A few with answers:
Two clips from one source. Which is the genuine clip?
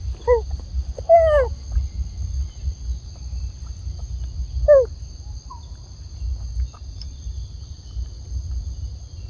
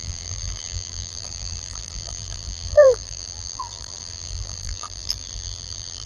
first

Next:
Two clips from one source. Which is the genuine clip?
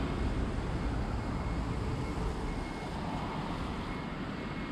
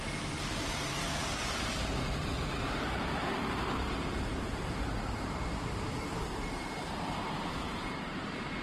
first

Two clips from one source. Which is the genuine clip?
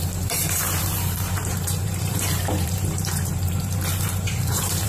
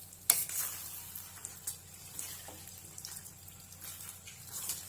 second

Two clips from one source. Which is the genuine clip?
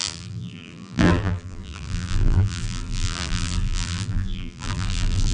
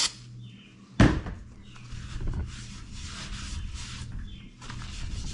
second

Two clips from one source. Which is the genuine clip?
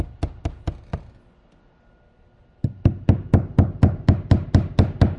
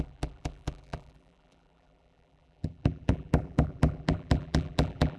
first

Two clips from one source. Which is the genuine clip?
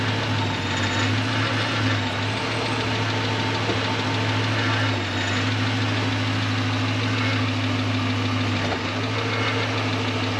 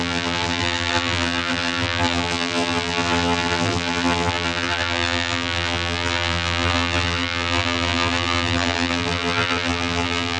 first